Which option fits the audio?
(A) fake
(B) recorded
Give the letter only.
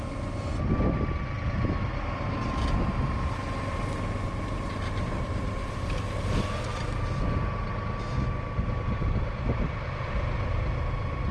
B